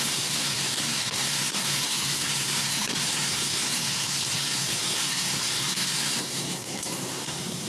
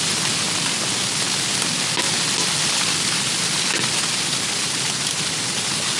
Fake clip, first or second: first